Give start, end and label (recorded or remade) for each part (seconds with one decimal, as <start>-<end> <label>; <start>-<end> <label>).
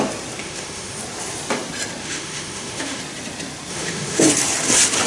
0.0-0.4 recorded; 0.4-1.0 remade; 1.0-2.0 recorded; 2.0-3.0 remade; 3.0-3.7 recorded; 3.7-4.2 remade; 4.2-5.1 recorded